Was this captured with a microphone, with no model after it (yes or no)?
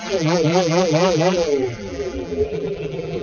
no